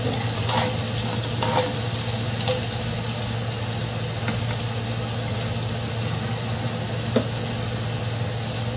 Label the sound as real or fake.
real